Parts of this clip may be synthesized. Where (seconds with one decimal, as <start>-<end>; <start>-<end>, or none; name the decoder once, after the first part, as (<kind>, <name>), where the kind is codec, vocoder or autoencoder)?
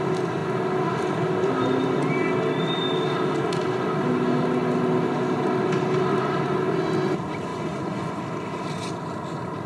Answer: 7.5-8.2 (vocoder, Vocos)